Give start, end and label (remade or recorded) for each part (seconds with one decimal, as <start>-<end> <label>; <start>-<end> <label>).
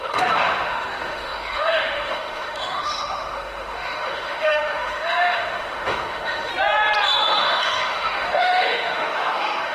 0.0-6.5 remade; 6.5-7.2 recorded; 7.2-9.7 remade